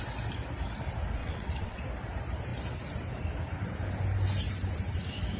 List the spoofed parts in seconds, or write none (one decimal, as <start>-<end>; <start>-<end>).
1.2-1.8